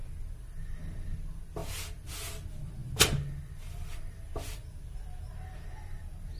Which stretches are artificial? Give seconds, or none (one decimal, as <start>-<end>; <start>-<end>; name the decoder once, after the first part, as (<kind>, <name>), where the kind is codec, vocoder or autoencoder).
none

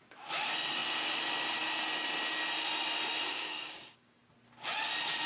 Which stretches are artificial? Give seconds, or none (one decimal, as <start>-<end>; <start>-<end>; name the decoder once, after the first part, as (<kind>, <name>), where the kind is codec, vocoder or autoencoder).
3.3-4.2 (codec, DAC)

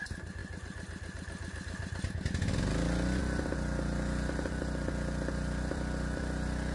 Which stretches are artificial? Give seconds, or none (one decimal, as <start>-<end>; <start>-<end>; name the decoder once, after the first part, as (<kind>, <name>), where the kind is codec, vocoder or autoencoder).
0.0-0.4 (vocoder, BigVGAN v2); 3.2-6.7